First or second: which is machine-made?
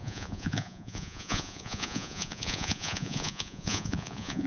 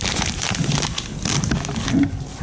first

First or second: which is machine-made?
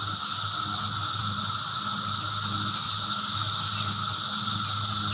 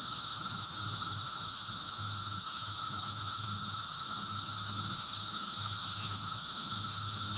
second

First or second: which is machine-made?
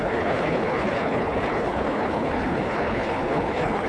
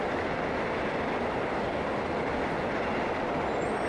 first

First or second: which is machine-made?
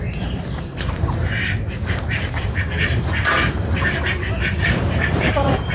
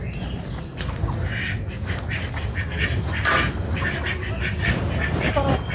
first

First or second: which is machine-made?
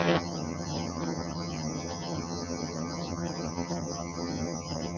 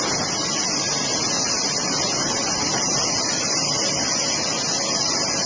first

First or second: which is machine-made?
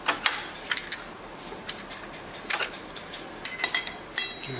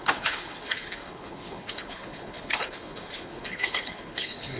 second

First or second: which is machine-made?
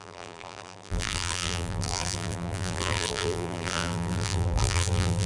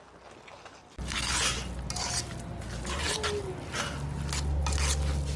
first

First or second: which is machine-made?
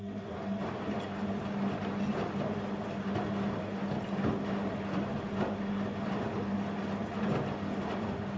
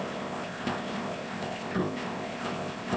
second